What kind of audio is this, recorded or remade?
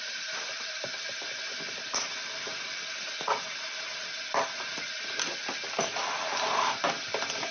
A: recorded